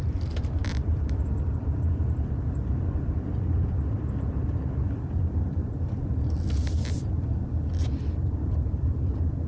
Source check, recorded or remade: remade